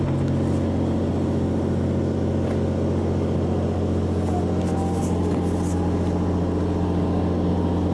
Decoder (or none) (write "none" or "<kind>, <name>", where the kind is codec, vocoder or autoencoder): none